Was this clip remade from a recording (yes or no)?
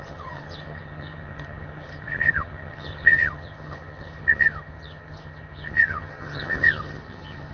yes